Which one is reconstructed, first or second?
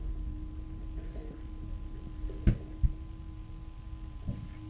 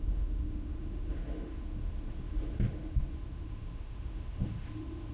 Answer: second